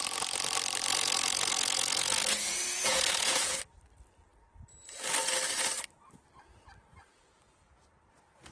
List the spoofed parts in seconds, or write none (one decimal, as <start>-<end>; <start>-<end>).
0.9-3.6